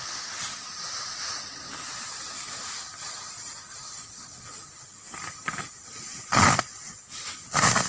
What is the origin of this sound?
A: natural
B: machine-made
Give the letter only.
A